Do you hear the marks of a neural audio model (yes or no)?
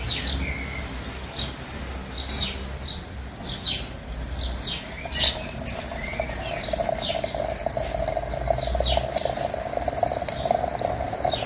no